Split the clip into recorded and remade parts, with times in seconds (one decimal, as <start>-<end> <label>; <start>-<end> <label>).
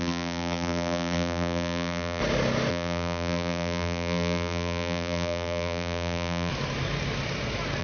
0.0-2.2 remade; 2.2-2.7 recorded; 2.7-6.5 remade; 6.5-7.8 recorded